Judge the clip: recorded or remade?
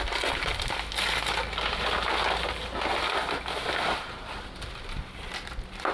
recorded